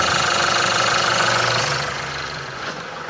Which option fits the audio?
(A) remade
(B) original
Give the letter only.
A